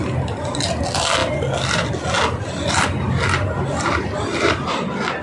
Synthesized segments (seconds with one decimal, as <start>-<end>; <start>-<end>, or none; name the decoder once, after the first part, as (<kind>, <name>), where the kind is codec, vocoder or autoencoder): none